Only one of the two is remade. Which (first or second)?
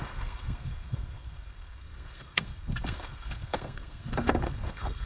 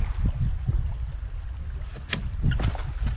first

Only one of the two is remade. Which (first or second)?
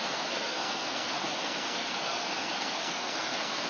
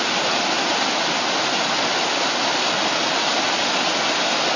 first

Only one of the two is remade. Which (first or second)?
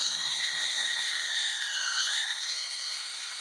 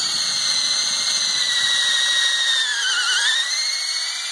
first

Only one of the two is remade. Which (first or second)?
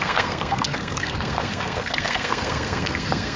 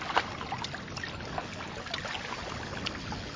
first